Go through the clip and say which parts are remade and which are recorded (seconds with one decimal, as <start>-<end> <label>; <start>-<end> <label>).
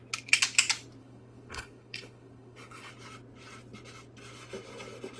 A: 0.0-1.0 recorded; 1.0-2.9 remade; 2.9-5.2 recorded